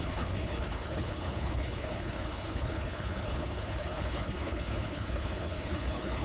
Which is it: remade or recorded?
remade